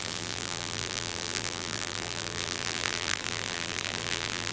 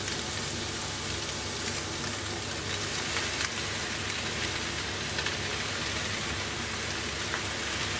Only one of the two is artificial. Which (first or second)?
first